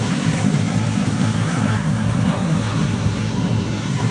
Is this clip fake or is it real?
fake